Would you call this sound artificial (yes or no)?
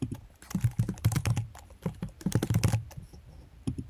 yes